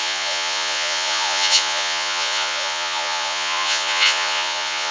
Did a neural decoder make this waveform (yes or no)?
yes